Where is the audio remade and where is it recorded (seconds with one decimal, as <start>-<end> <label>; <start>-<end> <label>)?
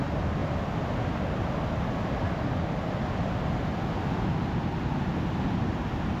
0.0-6.2 recorded